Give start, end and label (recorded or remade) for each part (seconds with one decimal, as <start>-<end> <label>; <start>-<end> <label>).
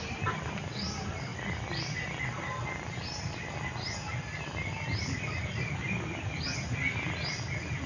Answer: 0.0-7.9 recorded